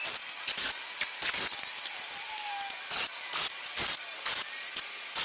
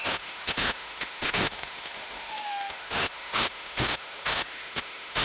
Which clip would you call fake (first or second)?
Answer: second